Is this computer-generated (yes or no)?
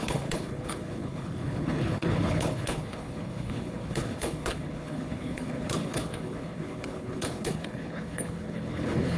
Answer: yes